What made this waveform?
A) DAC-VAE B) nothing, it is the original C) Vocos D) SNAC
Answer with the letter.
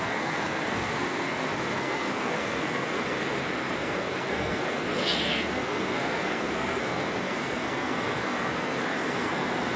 D